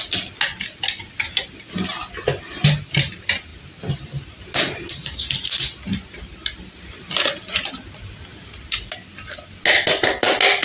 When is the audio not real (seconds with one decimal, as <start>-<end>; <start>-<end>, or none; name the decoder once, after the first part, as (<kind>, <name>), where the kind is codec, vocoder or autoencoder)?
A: none